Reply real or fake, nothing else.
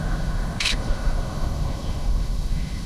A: fake